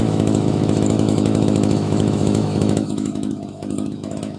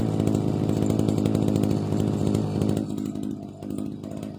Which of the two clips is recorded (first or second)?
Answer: second